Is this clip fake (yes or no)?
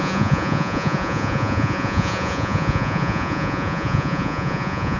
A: yes